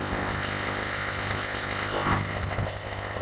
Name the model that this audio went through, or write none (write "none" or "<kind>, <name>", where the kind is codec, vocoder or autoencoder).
codec, ZipCodec